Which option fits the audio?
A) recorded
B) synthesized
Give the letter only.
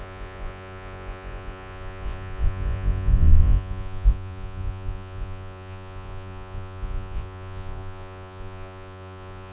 B